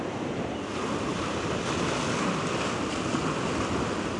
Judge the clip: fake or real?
real